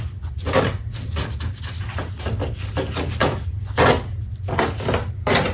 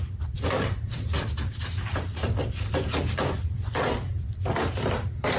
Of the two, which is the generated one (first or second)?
second